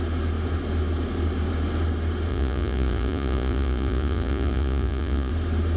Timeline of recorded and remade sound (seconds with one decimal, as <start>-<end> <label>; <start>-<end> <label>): 0.0-2.3 recorded; 2.3-5.3 remade; 5.3-5.8 recorded